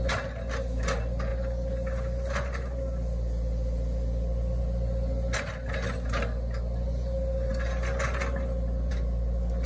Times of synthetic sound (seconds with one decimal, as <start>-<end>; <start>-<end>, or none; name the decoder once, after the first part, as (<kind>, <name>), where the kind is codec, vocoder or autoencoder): none